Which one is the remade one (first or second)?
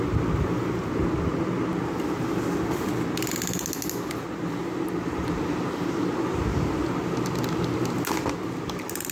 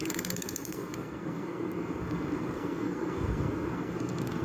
second